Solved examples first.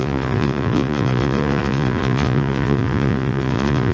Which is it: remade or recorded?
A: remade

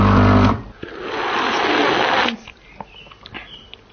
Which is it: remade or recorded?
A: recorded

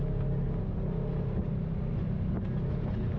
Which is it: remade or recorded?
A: recorded